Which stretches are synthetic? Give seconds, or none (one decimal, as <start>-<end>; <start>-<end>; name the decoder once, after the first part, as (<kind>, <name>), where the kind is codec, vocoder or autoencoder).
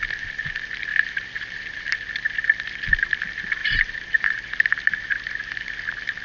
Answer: 0.9-1.9 (vocoder, BigVGAN v2); 3.6-4.5